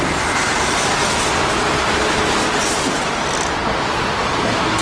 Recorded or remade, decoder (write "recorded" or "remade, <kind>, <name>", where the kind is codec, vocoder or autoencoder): recorded